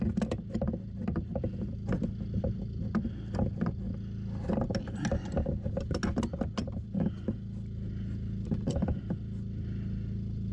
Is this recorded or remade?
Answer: recorded